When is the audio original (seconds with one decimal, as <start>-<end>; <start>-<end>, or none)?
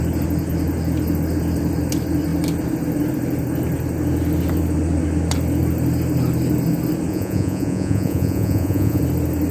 0.0-7.1; 9.0-9.5